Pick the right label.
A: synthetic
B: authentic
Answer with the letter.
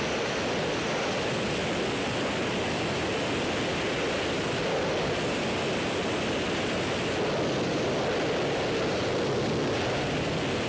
B